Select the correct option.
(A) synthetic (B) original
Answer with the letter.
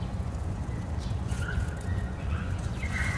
A